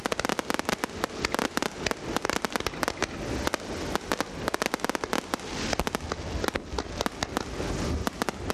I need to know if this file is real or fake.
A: real